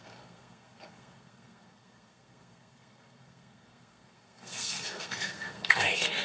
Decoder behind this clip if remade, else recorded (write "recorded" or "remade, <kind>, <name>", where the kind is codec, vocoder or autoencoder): remade, codec, SNAC